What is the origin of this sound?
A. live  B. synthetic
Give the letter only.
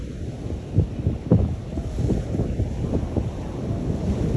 A